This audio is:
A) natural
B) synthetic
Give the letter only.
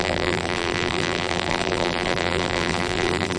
B